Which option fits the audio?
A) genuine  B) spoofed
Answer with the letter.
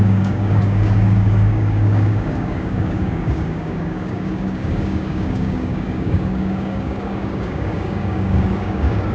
B